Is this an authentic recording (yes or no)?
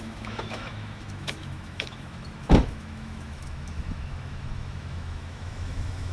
no